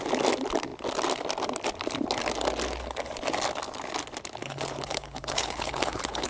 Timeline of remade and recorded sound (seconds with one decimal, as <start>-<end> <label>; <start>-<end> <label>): 0.0-4.4 recorded; 4.4-6.3 remade